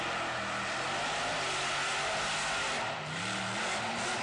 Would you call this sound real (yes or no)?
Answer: yes